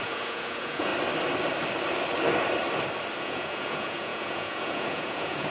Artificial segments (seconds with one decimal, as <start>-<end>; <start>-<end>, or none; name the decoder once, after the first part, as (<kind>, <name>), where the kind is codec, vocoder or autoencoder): 0.0-0.9 (vocoder, Vocos); 3.2-5.5

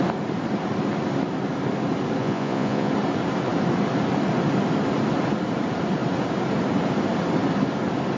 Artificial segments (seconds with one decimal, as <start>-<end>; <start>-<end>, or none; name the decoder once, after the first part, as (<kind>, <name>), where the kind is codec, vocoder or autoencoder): 2.2-2.9 (vocoder, Vocos)

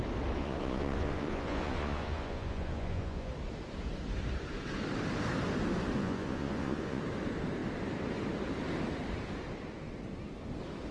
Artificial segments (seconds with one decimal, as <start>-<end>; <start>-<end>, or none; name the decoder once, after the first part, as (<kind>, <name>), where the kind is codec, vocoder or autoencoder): 0.4-3.3 (vocoder, Vocos); 6.0-7.0

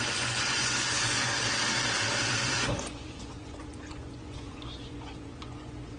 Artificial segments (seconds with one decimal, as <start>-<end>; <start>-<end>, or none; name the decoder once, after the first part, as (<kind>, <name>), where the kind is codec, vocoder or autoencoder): 0.0-1.3 (vocoder, Vocos); 2.4-6.0

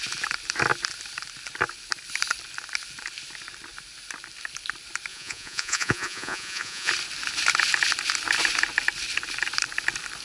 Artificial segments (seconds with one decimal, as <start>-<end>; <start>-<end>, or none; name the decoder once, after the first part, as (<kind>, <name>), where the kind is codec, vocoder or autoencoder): 5.1-6.9 (vocoder, Vocos)

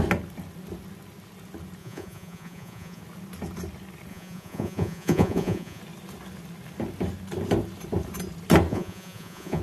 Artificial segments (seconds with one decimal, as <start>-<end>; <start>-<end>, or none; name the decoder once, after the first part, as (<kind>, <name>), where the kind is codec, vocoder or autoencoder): 1.8-3.0 (vocoder, Vocos); 4.1-5.8; 8.7-9.6